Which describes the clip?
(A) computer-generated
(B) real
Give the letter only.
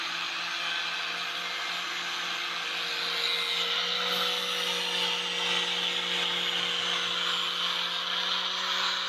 B